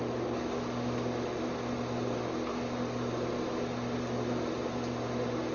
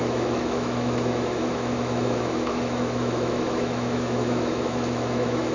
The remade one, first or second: second